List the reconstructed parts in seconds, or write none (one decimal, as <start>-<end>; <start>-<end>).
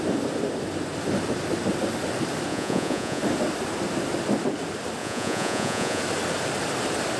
2.5-3.2; 5.0-6.0